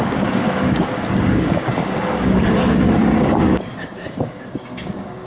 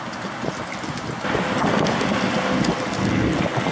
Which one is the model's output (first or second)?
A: first